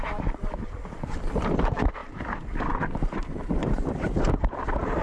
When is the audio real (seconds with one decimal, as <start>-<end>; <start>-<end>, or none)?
0.0-2.0; 2.7-3.6; 4.2-5.0